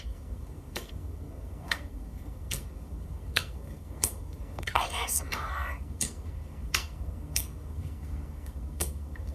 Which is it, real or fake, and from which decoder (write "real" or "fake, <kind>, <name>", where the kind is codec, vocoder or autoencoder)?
fake, codec, SNAC